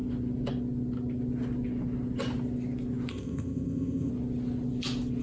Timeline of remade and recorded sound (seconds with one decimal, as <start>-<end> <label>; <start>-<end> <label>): 0.0-3.1 recorded; 3.1-4.1 remade; 4.1-5.2 recorded